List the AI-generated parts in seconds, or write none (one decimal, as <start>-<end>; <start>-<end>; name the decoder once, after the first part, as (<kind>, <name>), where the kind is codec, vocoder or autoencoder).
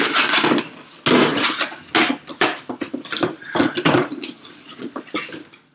4.0-5.1 (vocoder, Vocos)